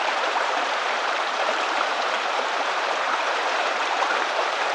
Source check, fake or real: fake